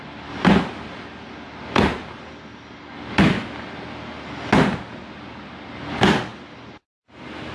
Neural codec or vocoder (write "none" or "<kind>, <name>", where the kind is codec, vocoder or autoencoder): none